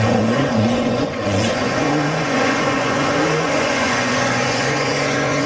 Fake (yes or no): yes